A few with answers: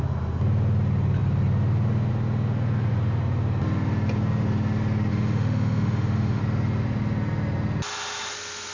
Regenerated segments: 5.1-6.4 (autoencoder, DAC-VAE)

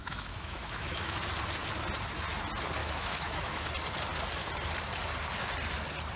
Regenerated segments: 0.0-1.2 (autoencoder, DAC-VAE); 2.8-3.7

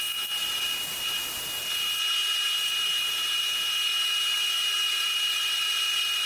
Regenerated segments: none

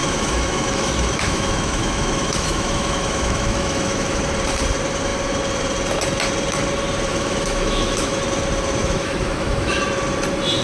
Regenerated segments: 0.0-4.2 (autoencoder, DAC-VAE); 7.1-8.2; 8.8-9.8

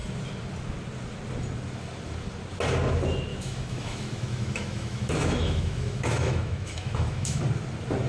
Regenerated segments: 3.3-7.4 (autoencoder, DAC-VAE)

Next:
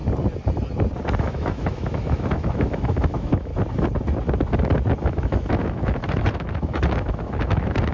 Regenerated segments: 1.2-3.5 (autoencoder, DAC-VAE); 5.0-7.9

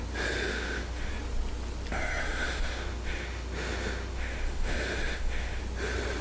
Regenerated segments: 0.5-1.1 (autoencoder, DAC-VAE); 1.9-5.6